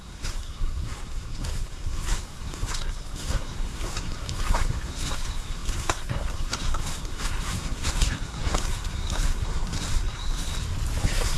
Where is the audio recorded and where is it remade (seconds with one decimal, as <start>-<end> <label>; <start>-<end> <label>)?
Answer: 0.0-10.5 remade; 10.5-11.0 recorded; 11.0-11.4 remade